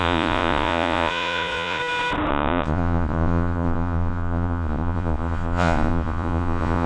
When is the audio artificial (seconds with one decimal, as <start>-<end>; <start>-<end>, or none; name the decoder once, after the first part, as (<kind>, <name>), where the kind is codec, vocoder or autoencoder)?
0.0-1.8 (vocoder, Vocos); 2.3-6.9